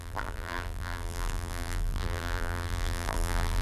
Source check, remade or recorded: remade